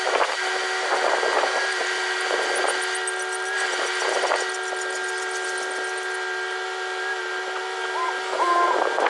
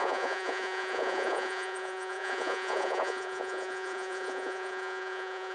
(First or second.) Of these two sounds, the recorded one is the first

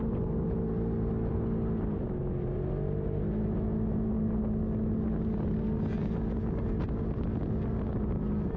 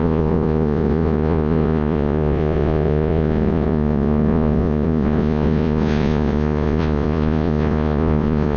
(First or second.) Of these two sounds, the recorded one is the first